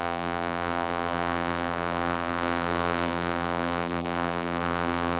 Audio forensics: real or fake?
fake